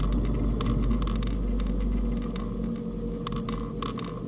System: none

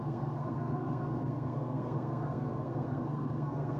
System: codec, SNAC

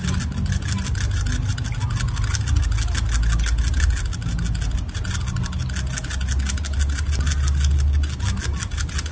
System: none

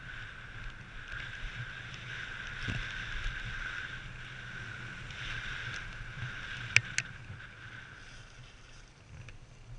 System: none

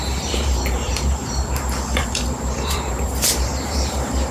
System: vocoder, BigVGAN v2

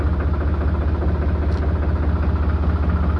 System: none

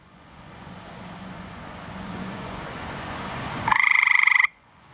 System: vocoder, Vocos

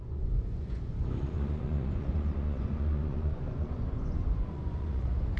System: vocoder, Vocos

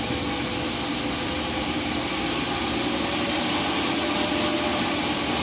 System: none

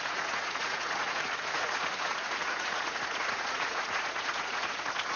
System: vocoder, Vocos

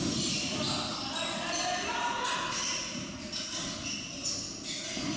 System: none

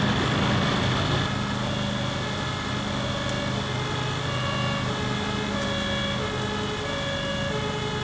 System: none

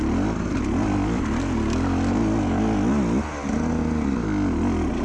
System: none